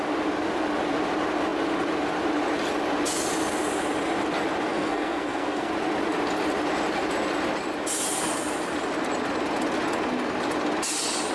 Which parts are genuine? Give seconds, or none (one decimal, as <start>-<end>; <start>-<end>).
0.0-4.7; 5.7-11.3